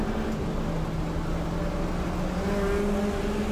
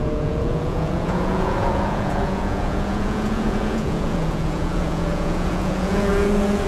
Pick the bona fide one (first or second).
first